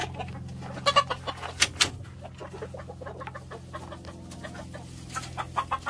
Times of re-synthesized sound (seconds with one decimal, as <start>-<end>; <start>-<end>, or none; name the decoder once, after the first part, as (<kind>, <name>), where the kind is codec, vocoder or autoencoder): none